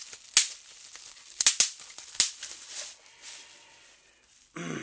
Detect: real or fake real